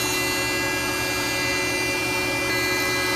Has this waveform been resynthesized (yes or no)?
no